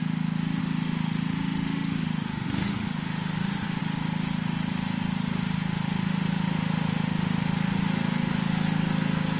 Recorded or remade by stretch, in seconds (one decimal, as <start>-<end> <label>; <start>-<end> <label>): 0.0-0.6 recorded; 0.6-3.8 remade; 3.8-5.7 recorded; 5.7-7.7 remade; 7.7-9.4 recorded

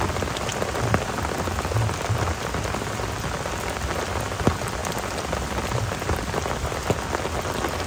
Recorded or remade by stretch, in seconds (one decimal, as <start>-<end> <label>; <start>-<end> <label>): 0.0-7.9 recorded

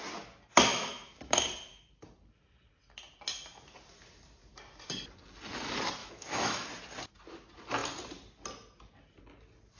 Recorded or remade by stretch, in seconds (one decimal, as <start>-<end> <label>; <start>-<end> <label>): 0.0-0.7 recorded; 0.7-1.4 remade; 1.4-6.0 recorded; 6.0-6.7 remade; 6.7-9.8 recorded